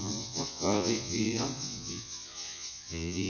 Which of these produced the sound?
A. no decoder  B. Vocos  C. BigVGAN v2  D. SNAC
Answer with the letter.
B